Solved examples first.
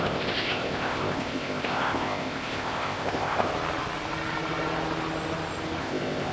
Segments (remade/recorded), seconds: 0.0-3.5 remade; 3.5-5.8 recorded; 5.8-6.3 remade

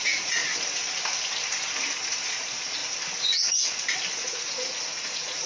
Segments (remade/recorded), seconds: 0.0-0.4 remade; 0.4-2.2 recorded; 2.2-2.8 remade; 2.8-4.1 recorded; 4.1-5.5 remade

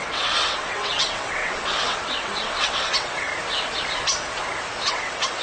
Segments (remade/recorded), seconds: 0.0-3.3 remade; 3.3-4.9 recorded; 4.9-5.4 remade

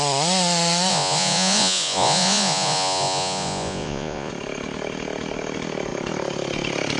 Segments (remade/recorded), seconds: 0.0-0.9 recorded; 0.9-4.3 remade; 4.3-7.0 recorded

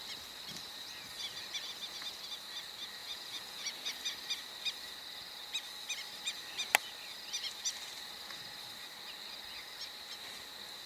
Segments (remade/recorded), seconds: 0.0-3.0 recorded; 3.0-3.9 remade; 3.9-10.9 recorded

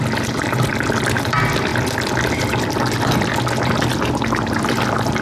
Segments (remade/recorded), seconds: 0.0-5.2 recorded